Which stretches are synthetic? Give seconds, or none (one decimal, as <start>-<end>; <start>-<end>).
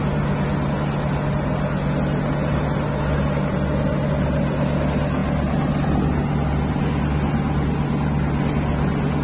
none